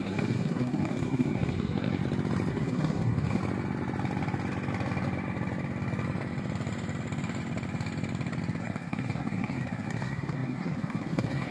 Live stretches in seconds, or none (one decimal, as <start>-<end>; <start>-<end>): 2.0-2.5; 3.4-8.6